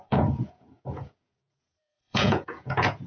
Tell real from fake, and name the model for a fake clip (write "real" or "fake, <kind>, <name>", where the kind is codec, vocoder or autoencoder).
fake, vocoder, Vocos